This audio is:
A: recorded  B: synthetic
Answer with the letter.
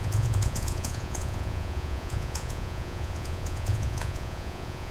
B